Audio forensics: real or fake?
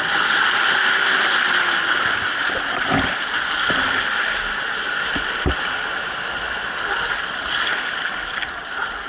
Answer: real